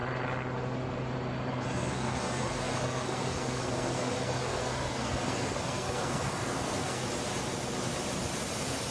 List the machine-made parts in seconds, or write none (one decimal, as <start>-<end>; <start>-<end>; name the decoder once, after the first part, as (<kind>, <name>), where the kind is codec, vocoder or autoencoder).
1.5-7.0 (codec, SNAC)

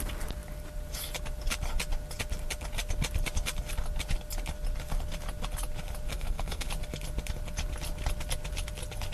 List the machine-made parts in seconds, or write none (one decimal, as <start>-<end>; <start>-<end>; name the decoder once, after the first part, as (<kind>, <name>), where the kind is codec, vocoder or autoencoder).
6.1-6.7 (codec, SNAC)

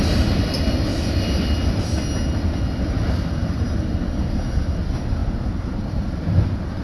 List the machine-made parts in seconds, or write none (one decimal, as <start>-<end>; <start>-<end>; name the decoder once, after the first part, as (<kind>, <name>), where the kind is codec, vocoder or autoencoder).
none